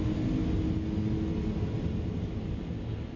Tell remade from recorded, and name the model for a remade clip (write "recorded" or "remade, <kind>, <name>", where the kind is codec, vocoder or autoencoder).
recorded